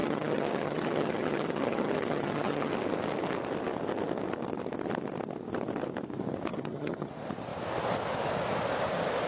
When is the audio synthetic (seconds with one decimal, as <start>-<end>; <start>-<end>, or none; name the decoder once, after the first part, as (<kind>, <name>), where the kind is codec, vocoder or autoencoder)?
0.0-2.7 (vocoder, HiFi-GAN); 6.5-7.1